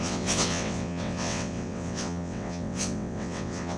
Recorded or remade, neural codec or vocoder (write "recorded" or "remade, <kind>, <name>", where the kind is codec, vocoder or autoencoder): remade, vocoder, WaveNeXt